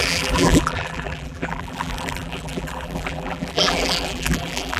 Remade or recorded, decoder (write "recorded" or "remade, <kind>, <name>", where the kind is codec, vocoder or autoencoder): remade, vocoder, BigVGAN v2